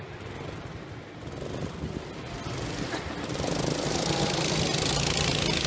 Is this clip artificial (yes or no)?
no